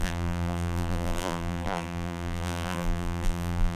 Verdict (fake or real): fake